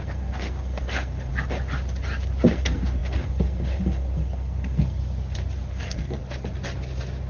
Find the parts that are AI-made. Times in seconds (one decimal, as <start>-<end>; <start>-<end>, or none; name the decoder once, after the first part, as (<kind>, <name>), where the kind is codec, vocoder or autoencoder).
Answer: 0.0-1.3 (codec, SNAC); 2.5-5.0; 5.7-6.2